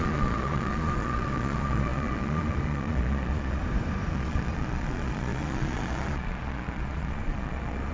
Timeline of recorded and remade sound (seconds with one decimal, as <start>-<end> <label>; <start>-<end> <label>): 0.0-3.6 remade; 3.6-4.1 recorded; 4.1-7.9 remade